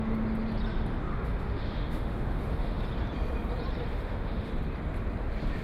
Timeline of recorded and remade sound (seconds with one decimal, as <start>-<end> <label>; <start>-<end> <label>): 0.0-1.1 recorded; 1.1-2.8 remade; 2.8-3.9 recorded; 3.9-4.5 remade; 4.5-5.6 recorded